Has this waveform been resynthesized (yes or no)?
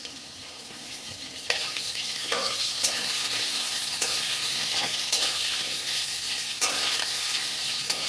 yes